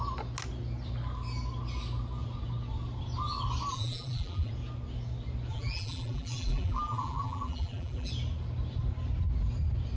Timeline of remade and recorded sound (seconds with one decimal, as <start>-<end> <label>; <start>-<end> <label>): 0.0-3.7 recorded; 3.7-4.5 remade; 4.5-5.5 recorded; 5.5-8.1 remade; 8.1-10.0 recorded